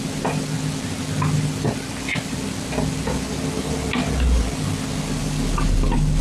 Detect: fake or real real